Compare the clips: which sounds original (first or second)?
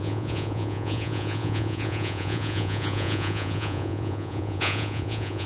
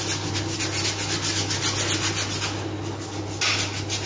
second